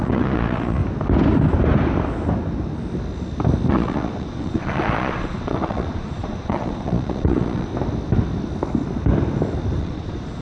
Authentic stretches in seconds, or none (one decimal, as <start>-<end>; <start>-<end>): 0.8-3.7; 7.7-9.8